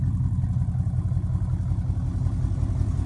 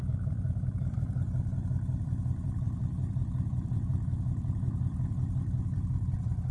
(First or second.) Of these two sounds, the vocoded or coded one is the second